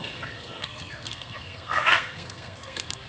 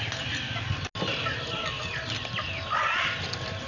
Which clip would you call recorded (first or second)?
second